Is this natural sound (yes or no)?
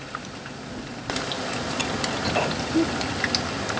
yes